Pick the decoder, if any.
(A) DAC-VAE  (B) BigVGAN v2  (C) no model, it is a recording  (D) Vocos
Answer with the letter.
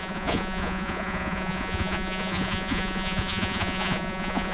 D